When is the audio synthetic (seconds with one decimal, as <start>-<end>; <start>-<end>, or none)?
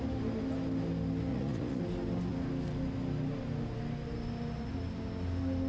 1.3-1.8